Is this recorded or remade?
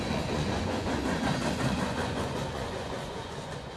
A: remade